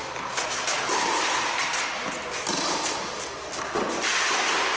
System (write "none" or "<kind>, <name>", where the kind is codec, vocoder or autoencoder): none